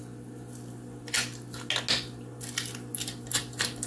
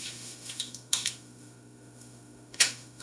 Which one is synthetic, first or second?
second